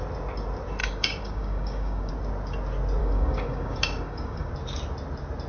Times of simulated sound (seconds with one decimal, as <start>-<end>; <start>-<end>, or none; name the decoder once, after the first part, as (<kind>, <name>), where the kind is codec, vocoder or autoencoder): 0.8-2.1 (codec, DAC); 3.0-4.5